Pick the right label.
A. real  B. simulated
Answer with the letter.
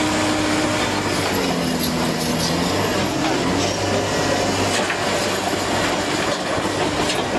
A